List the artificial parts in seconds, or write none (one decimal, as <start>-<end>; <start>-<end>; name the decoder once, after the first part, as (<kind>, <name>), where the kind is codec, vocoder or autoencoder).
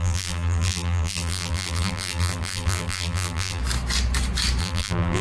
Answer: 0.0-3.6 (vocoder, BigVGAN v2); 4.6-5.2